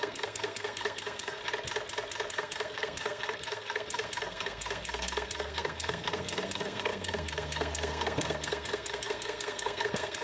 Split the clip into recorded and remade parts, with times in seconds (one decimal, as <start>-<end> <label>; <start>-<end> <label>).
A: 0.0-1.4 remade; 1.4-2.3 recorded; 2.3-10.2 remade